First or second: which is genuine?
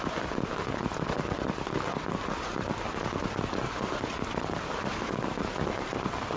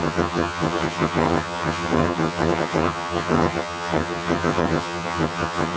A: first